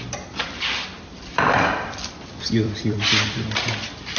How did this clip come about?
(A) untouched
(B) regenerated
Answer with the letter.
B